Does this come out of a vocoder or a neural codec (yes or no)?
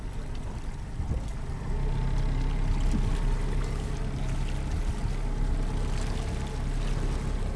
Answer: no